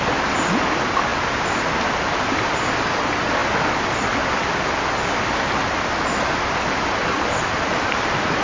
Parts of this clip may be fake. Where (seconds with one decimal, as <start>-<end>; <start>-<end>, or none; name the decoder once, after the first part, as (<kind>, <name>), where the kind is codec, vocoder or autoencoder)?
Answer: none